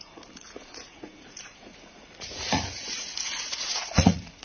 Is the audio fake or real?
fake